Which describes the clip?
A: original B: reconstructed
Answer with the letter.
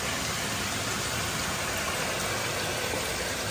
A